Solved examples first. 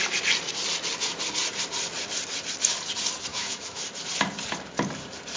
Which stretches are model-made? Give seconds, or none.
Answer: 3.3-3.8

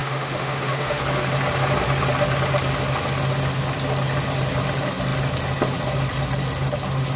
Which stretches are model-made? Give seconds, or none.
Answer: 0.0-1.0

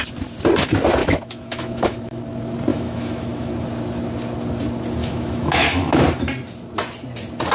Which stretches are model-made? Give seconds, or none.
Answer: 1.0-2.2; 2.7-3.5; 5.0-6.0

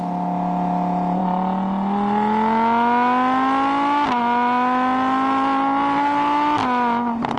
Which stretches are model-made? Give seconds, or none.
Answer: none

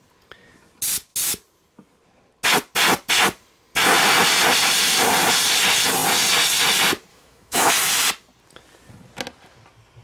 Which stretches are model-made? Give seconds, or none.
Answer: 7.1-7.7

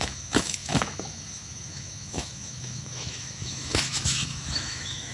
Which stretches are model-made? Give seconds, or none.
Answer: 0.0-5.1

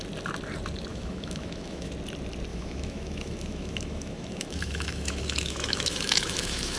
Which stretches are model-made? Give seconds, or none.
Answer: 0.9-1.9; 2.5-6.8